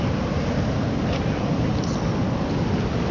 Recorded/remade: recorded